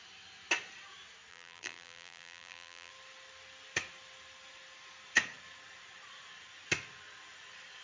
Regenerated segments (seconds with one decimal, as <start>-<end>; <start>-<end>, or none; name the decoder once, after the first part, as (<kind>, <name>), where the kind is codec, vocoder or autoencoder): 1.3-2.9 (vocoder, BigVGAN v2)